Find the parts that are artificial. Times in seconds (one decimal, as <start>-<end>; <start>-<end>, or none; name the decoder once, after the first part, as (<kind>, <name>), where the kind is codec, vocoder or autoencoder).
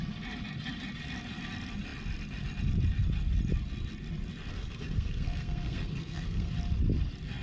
4.5-6.5 (codec, SNAC)